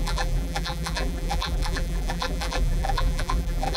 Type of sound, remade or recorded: remade